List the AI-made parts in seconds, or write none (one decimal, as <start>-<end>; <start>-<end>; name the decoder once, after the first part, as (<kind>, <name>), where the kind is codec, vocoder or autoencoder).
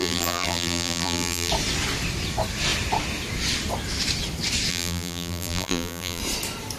0.0-1.5 (vocoder, BigVGAN v2); 4.7-6.2